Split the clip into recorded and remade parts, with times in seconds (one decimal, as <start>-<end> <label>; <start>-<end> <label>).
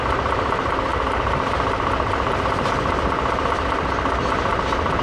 0.0-0.9 recorded; 0.9-2.4 remade; 2.4-4.5 recorded; 4.5-5.0 remade